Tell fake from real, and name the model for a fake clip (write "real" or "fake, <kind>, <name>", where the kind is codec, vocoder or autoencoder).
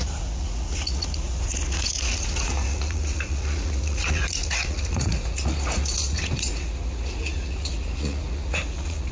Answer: fake, vocoder, Vocos